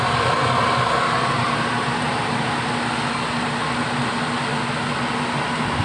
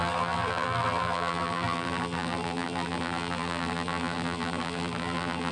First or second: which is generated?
second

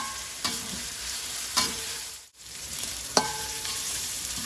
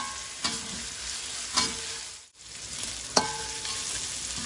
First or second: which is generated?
first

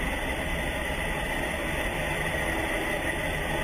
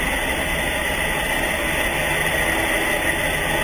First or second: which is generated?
first